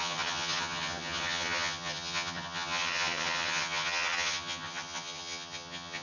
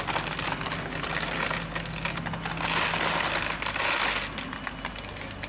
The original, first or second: second